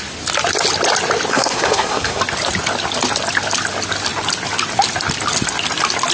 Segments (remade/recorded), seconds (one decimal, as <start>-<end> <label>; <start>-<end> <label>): 0.0-1.3 recorded; 1.3-2.2 remade; 2.2-6.1 recorded